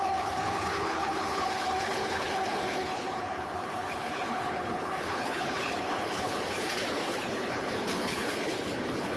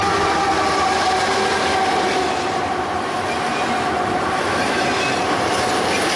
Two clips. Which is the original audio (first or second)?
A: second